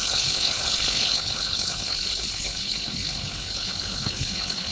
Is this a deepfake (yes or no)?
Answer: yes